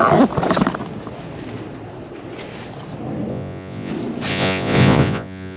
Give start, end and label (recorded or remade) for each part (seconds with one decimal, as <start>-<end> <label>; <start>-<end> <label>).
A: 0.0-3.3 recorded; 3.3-3.9 remade; 3.9-4.3 recorded; 4.3-5.6 remade